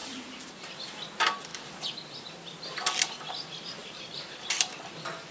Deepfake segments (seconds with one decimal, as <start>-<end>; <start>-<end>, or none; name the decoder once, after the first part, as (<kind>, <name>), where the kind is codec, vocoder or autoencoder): 0.0-0.7 (vocoder, BigVGAN v2); 3.8-4.7